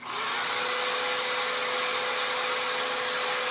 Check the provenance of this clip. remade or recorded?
recorded